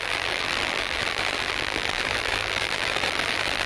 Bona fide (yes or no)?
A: no